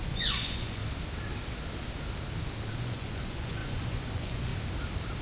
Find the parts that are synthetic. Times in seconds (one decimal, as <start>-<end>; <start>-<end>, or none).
0.0-0.8; 2.8-4.5